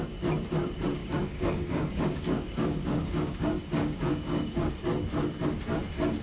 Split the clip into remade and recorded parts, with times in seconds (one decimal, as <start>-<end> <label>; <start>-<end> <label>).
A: 0.0-1.0 recorded; 1.0-4.7 remade; 4.7-6.2 recorded